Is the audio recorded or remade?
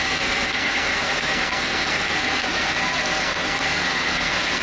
remade